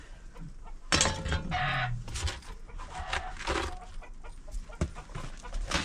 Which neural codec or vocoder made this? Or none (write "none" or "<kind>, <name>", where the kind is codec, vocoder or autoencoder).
none